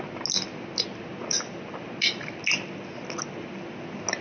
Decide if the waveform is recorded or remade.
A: recorded